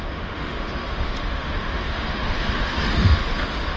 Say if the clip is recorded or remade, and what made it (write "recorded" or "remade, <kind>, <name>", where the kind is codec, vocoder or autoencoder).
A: remade, autoencoder, DAC-VAE